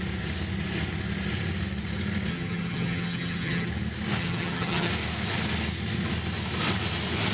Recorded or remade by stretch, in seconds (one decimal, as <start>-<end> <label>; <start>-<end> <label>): 0.0-2.3 recorded; 2.3-3.7 remade; 3.7-4.2 recorded; 4.2-4.9 remade; 4.9-7.3 recorded